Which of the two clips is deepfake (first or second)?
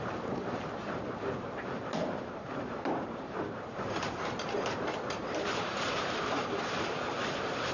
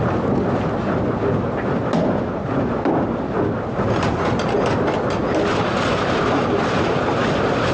first